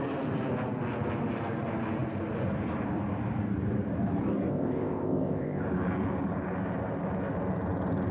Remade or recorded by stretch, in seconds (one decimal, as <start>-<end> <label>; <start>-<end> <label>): 0.0-4.5 recorded; 4.5-5.6 remade; 5.6-8.1 recorded